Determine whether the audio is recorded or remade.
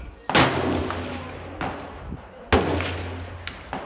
recorded